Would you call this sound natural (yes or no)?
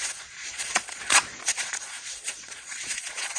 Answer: no